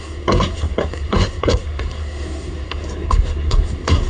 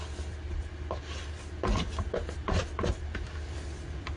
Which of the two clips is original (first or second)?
second